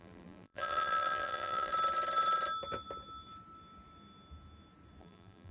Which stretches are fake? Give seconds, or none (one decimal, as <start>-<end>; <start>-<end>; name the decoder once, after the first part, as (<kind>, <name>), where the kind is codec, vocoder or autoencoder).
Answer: 0.0-1.7 (vocoder, BigVGAN v2); 5.0-5.5